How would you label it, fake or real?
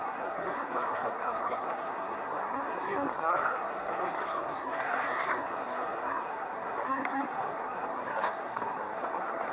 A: fake